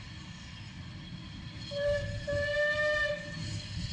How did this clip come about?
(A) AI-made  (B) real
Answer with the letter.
B